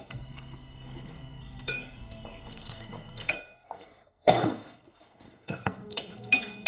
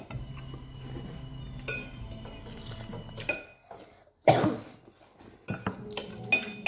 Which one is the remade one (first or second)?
first